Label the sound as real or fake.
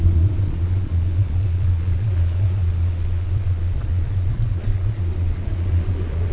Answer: fake